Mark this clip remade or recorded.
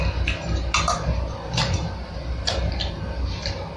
recorded